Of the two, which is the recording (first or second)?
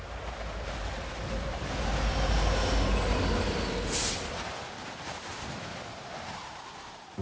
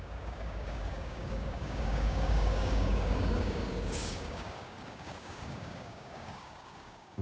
first